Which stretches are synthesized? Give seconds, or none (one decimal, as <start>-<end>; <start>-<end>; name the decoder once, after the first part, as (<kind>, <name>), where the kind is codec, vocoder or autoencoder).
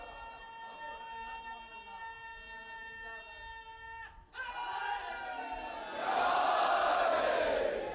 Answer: none